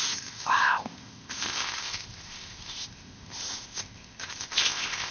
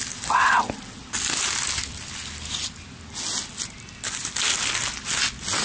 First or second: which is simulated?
first